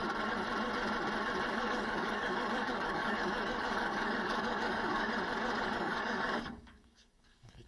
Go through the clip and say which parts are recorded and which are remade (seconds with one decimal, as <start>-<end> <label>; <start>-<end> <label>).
0.0-1.5 recorded; 1.5-5.1 remade; 5.1-5.6 recorded; 5.6-7.7 remade